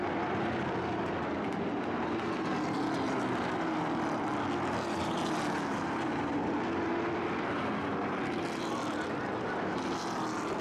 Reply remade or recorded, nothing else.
recorded